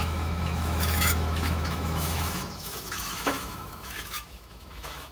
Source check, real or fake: fake